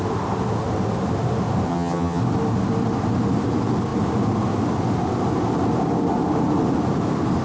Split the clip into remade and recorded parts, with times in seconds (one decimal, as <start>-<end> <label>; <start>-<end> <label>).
0.0-1.7 recorded; 1.7-2.2 remade; 2.2-7.4 recorded